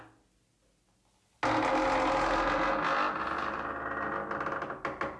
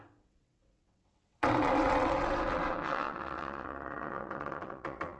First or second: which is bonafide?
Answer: first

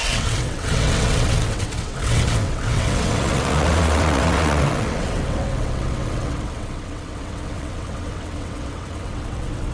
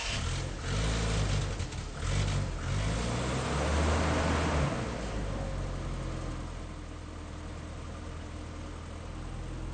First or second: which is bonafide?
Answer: second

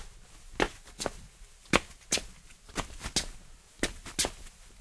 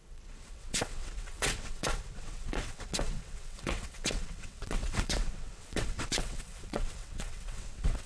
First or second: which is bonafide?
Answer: first